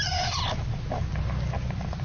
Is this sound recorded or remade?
recorded